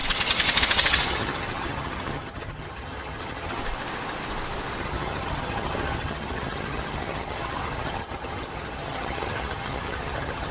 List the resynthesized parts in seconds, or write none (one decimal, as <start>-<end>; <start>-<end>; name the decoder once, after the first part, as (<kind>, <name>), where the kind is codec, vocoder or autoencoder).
0.6-3.6 (vocoder, HiFi-GAN); 4.8-10.5